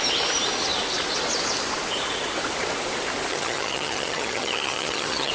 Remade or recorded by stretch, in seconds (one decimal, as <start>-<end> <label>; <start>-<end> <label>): 0.0-3.3 recorded; 3.3-5.3 remade